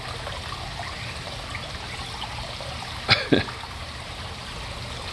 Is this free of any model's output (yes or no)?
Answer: yes